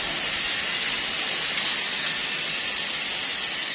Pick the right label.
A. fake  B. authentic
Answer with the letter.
B